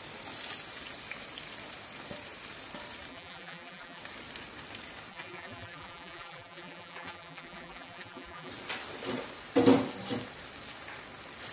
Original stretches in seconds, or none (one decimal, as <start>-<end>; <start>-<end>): 0.0-3.1; 4.0-5.1; 8.5-11.5